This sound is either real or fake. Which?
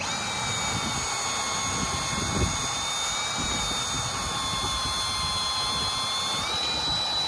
real